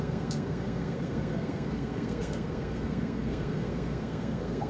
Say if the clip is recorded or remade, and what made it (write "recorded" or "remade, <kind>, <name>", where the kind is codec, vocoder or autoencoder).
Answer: remade, codec, SNAC